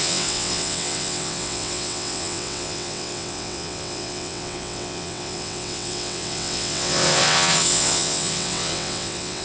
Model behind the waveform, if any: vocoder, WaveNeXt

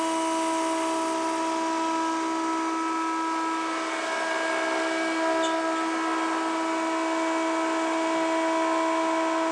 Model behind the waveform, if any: none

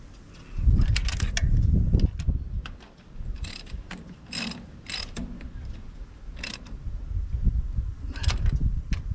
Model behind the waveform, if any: none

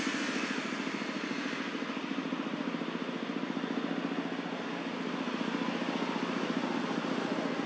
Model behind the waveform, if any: none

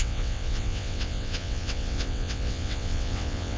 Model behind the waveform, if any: vocoder, WaveNeXt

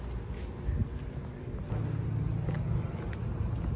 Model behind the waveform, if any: none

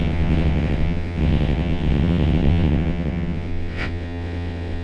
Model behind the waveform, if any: vocoder, WaveNeXt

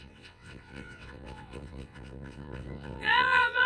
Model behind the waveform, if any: vocoder, WaveNeXt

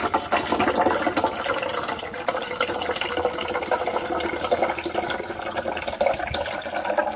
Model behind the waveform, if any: none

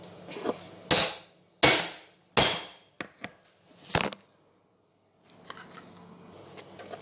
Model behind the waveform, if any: none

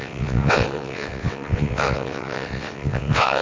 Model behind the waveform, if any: vocoder, WaveNeXt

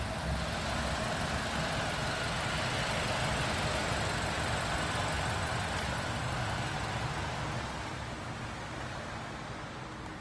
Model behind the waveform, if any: none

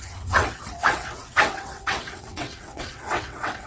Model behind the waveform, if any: vocoder, WaveNeXt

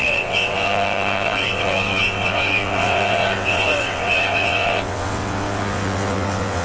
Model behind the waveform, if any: vocoder, WaveNeXt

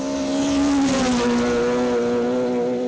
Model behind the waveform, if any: none